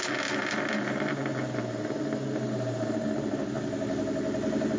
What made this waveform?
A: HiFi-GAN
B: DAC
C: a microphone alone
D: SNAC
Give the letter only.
C